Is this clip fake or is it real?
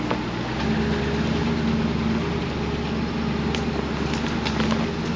real